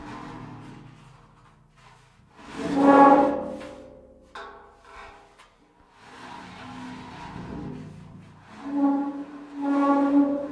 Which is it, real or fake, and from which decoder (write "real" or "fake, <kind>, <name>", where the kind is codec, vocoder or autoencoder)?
real